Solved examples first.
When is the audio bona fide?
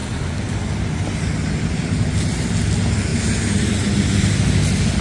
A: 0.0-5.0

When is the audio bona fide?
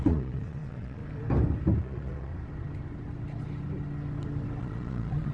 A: 1.0-1.8; 2.3-4.6